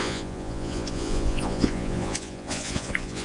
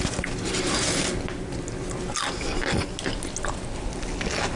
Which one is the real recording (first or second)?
second